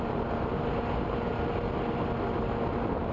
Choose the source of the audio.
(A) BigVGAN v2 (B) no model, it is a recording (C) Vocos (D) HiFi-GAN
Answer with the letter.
B